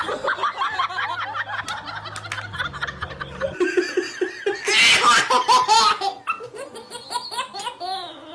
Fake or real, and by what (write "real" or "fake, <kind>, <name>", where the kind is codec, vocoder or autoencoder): real